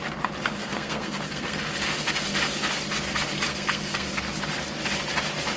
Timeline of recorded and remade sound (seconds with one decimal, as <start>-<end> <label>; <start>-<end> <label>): 0.0-0.6 recorded; 0.6-1.6 remade; 1.6-3.5 recorded; 3.5-4.1 remade; 4.1-5.6 recorded